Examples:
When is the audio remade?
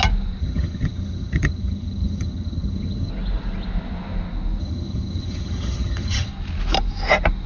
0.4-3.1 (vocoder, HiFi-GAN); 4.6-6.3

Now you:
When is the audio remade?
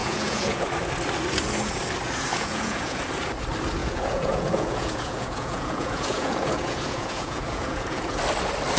0.0-0.7 (vocoder, Vocos); 2.3-3.0; 3.8-8.2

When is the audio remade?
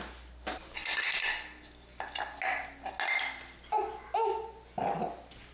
none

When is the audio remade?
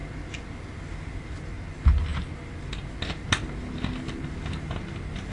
none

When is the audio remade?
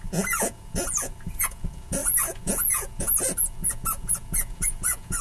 0.0-5.2 (vocoder, Vocos)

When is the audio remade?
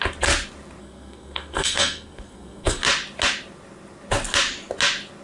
0.8-2.8 (codec, SNAC)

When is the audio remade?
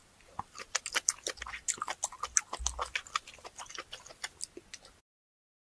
none